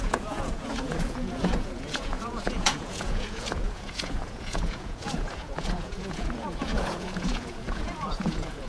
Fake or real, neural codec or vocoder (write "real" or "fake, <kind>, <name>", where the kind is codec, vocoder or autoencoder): fake, vocoder, Vocos